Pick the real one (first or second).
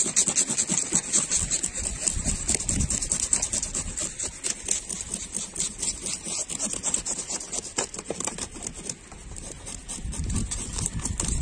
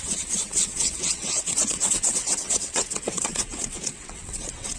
first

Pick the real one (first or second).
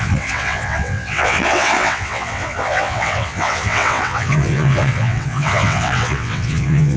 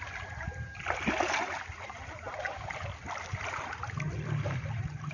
second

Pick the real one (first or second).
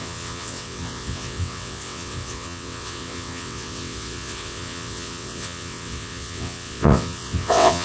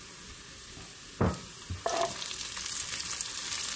second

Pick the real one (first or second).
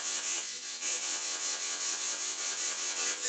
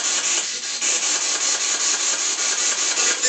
second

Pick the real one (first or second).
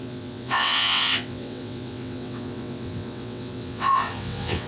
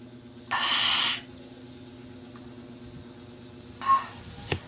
second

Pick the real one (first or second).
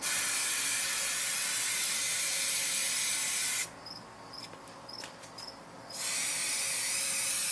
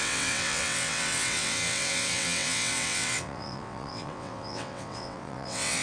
first